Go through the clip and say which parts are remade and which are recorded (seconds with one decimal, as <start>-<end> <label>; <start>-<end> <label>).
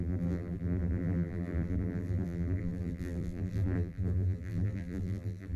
0.0-5.6 remade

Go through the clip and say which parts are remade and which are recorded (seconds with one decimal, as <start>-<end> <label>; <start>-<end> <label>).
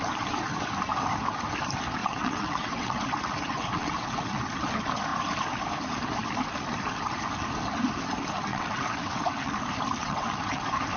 0.0-2.0 recorded; 2.0-4.4 remade; 4.4-8.5 recorded; 8.5-9.5 remade; 9.5-10.0 recorded; 10.0-10.6 remade; 10.6-11.0 recorded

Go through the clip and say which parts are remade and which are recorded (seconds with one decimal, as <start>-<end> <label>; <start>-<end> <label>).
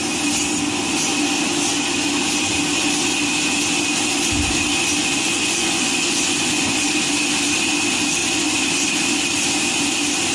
0.0-5.0 recorded; 5.0-6.9 remade; 6.9-8.2 recorded; 8.2-8.9 remade; 8.9-10.3 recorded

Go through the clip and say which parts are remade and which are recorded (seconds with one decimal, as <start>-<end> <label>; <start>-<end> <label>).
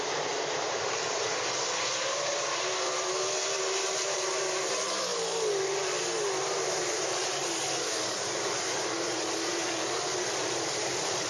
0.0-5.1 remade; 5.1-6.4 recorded; 6.4-9.6 remade; 9.6-10.4 recorded; 10.4-11.3 remade